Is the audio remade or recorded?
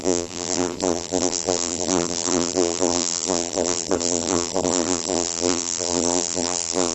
remade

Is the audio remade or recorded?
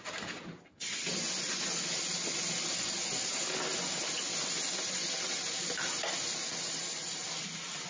recorded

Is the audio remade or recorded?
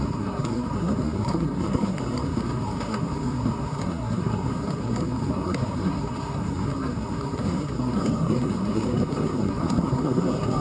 remade